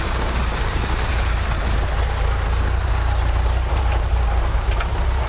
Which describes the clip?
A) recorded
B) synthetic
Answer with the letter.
B